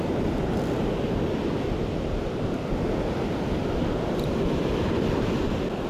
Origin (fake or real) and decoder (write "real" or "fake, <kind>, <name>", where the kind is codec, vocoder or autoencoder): real